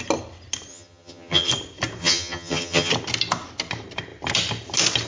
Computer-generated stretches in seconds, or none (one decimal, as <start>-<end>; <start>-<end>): 0.7-1.5; 2.0-2.9